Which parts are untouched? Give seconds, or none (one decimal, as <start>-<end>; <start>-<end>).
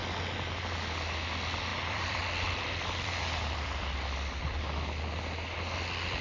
0.0-1.7; 4.6-6.2